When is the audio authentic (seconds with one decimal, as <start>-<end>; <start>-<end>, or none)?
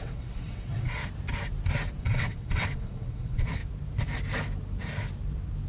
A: 1.0-2.0; 3.6-5.7